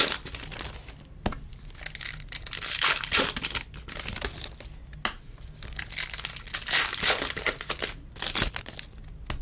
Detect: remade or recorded recorded